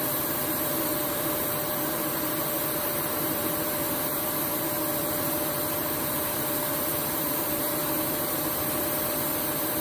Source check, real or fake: fake